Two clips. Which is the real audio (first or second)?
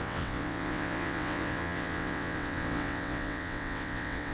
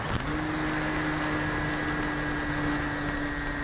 second